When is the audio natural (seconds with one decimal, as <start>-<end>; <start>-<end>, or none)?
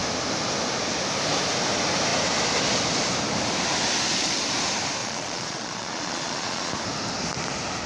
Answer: 0.0-5.0; 6.7-7.9